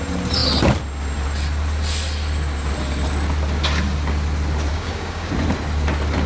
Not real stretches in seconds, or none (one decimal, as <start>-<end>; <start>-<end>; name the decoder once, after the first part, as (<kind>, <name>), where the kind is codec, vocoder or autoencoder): 4.7-5.3 (codec, DAC)